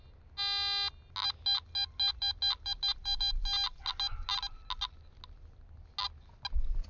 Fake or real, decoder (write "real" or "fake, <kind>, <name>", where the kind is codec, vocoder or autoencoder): real